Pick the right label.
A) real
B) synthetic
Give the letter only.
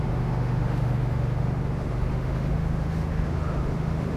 B